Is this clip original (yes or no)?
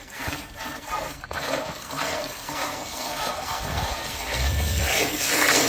no